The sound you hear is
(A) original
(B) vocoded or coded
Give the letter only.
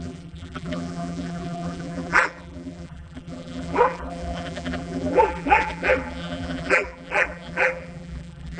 B